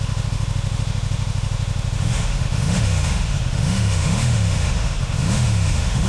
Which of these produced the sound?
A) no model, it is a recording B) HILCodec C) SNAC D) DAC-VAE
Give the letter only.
D